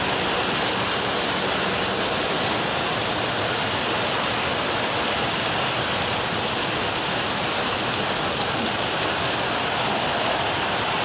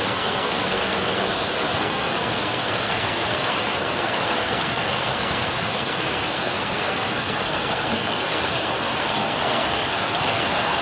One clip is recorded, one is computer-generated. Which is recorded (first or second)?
first